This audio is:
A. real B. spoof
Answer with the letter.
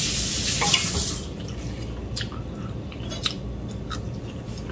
A